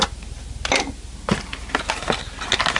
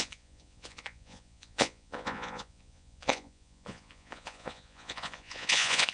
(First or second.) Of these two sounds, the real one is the first